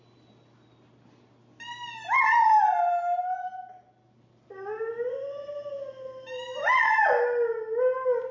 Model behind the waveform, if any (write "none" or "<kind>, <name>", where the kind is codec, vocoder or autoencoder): none